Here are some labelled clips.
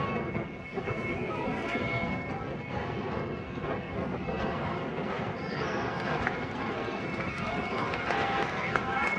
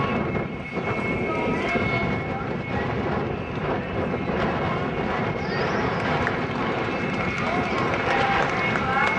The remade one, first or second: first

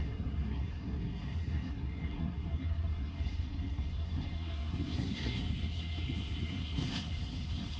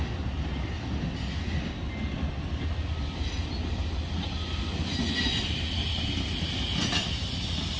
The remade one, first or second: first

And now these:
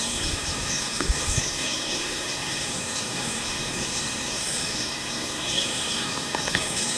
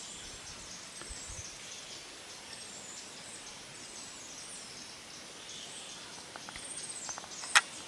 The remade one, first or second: first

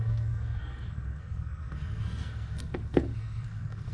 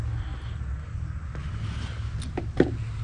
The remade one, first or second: first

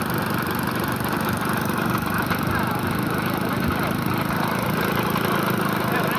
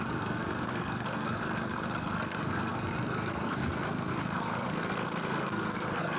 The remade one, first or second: second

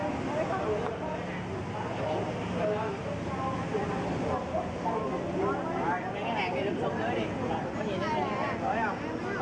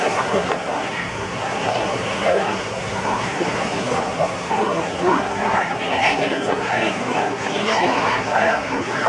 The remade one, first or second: second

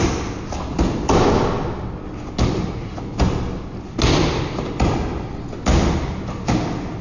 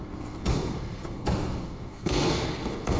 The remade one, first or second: second